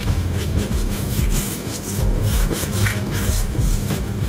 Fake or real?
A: fake